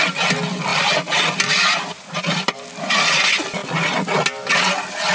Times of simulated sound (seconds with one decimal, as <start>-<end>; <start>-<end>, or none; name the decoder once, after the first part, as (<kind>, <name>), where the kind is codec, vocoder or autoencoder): 0.7-1.3 (vocoder, BigVGAN v2)